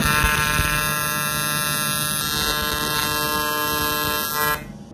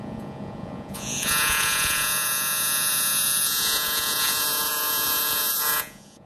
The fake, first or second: second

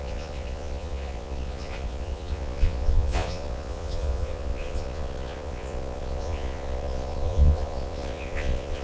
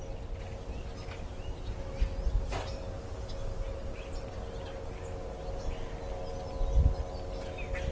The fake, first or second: first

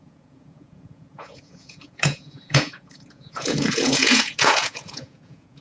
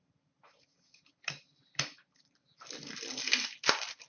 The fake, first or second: first